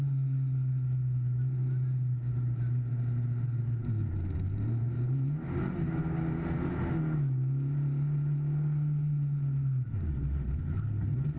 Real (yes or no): yes